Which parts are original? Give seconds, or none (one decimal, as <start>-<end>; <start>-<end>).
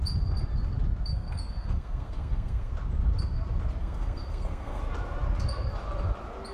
0.0-1.1; 2.7-3.8; 4.8-6.5